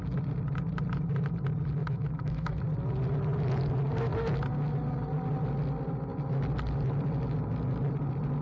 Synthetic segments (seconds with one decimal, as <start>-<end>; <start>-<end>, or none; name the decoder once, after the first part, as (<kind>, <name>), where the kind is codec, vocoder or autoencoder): 1.8-2.6 (autoencoder, DAC-VAE)